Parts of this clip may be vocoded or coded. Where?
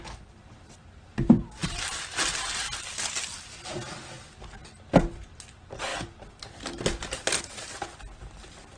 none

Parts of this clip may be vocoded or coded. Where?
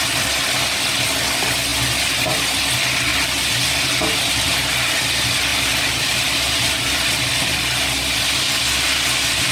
3.1-4.7 (vocoder, BigVGAN v2); 5.5-7.3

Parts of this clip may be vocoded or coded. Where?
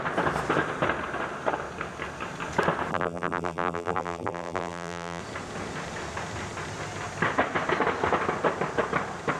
2.9-5.2 (vocoder, BigVGAN v2)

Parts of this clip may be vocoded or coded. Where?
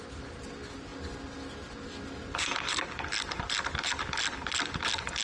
2.2-4.3 (vocoder, BigVGAN v2)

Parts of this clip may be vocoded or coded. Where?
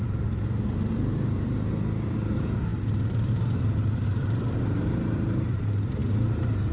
0.0-6.7 (vocoder, BigVGAN v2)